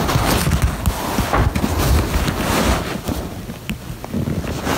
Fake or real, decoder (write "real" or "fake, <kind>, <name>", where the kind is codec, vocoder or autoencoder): real